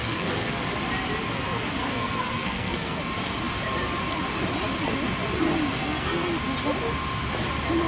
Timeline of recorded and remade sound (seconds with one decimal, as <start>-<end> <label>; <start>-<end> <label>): 0.0-0.6 remade; 0.6-1.8 recorded; 1.8-3.0 remade; 3.0-5.7 recorded; 5.7-6.3 remade; 6.3-7.9 recorded